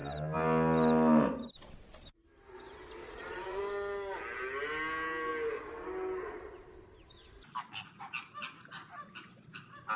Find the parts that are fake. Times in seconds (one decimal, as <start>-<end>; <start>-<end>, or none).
3.0-3.6